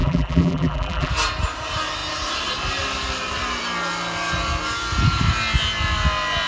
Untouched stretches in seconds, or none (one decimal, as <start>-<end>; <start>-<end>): 1.1-6.5